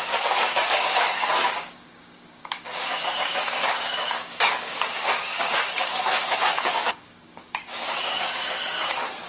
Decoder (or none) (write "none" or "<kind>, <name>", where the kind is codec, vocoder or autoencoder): codec, DAC